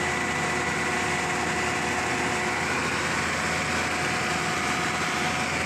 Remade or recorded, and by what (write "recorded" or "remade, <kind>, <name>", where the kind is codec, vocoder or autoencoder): recorded